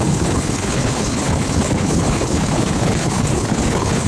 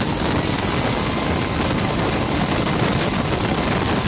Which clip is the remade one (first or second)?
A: first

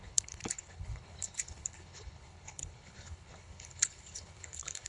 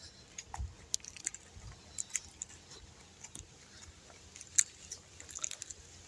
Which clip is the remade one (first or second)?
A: first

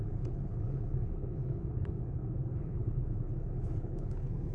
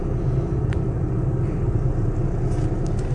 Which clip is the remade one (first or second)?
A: first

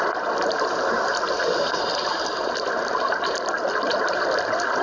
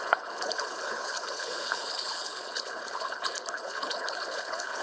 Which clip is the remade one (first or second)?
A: second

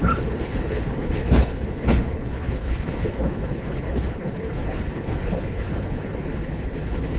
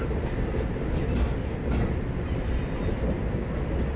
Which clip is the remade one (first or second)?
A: first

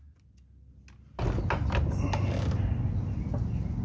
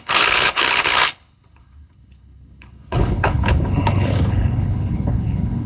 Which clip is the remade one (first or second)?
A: second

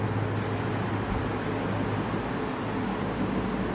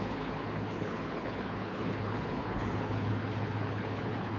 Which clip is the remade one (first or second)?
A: second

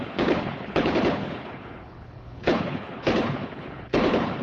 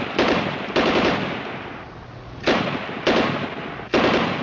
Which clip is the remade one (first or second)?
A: first